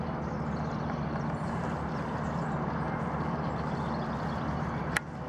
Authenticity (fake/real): real